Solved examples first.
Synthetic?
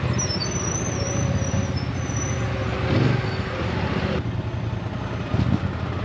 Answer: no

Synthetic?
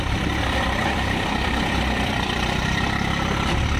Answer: yes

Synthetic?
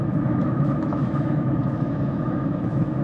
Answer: yes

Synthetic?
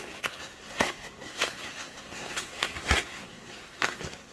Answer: yes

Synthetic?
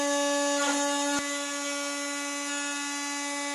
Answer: no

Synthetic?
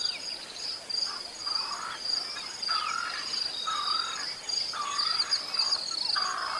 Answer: no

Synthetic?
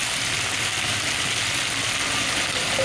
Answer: no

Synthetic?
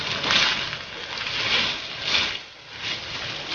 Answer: no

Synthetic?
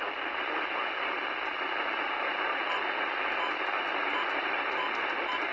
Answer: no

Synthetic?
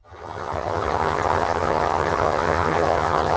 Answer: yes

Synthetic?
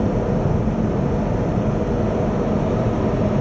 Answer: no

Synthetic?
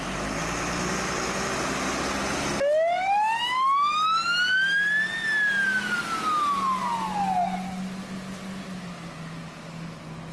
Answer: no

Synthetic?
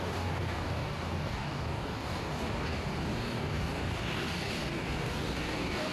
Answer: yes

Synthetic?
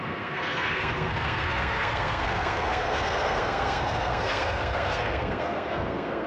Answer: yes